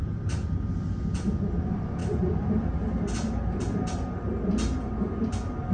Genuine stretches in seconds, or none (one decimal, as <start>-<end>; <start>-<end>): 0.7-5.7

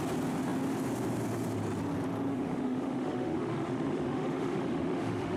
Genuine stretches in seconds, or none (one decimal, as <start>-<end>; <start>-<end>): 0.0-2.3

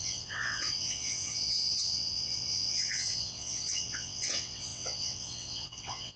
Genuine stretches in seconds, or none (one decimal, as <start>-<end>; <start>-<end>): none